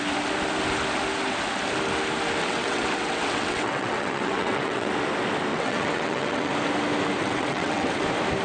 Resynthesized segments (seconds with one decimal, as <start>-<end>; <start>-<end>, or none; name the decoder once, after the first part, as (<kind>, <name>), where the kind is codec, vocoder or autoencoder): 2.4-4.9 (vocoder, WaveNeXt); 5.5-6.5; 7.2-8.0

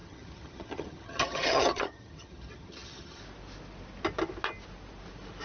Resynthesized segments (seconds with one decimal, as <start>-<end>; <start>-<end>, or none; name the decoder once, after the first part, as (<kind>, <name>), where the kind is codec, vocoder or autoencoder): 0.0-3.2 (vocoder, HiFi-GAN)

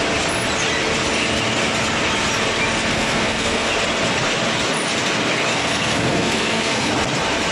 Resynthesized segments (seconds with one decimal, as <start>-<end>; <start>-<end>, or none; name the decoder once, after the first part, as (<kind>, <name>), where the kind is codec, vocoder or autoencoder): 2.9-3.7 (codec, SNAC); 5.5-6.9

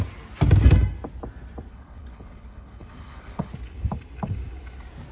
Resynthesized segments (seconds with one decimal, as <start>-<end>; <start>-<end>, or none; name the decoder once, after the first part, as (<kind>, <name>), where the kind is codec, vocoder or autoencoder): 1.7-3.5 (codec, HILCodec)

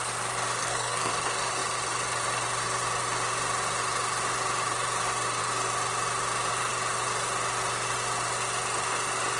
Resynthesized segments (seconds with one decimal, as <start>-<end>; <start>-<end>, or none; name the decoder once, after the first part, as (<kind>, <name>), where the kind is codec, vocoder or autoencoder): 0.6-1.1 (codec, SNAC)

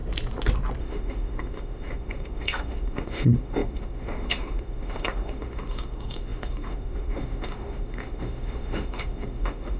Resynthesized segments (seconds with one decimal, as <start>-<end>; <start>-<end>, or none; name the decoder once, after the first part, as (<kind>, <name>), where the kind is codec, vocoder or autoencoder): 0.8-9.8 (autoencoder, DAC-VAE)